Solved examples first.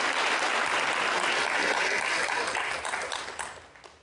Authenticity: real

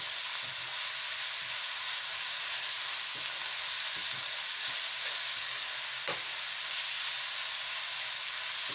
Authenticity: real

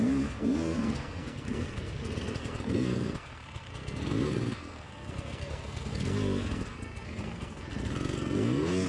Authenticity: fake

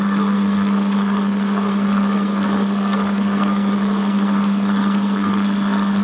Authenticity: fake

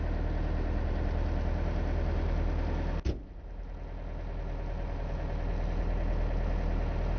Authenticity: real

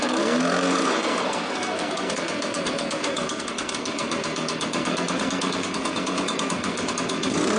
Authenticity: fake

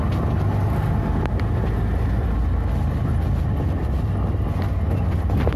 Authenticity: real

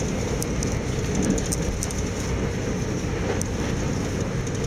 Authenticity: real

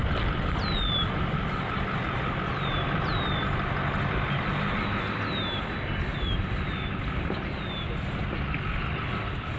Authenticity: real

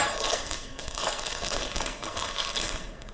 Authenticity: fake